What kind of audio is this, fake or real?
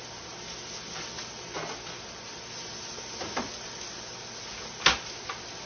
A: real